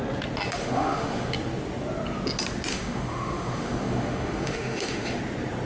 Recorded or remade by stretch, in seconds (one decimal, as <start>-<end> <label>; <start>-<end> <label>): 0.0-0.6 recorded; 0.6-1.3 remade; 1.3-2.7 recorded; 2.7-5.2 remade; 5.2-5.7 recorded